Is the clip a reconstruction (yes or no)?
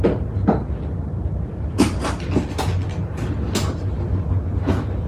no